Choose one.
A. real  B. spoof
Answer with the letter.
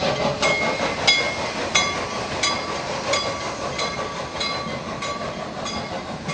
A